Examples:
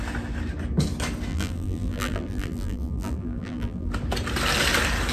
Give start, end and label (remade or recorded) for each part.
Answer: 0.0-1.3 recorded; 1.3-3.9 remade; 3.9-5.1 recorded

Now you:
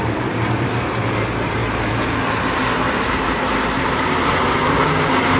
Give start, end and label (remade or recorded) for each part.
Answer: 0.0-1.6 remade; 1.6-2.9 recorded; 2.9-5.4 remade